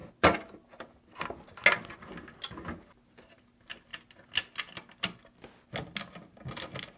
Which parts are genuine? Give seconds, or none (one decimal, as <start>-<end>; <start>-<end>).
0.0-7.0

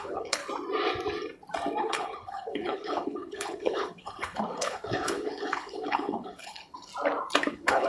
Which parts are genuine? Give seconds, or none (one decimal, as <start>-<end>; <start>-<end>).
0.4-1.8; 6.9-7.5